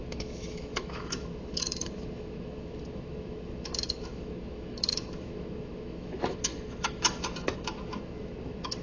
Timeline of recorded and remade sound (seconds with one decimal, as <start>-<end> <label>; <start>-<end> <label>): 0.0-8.8 remade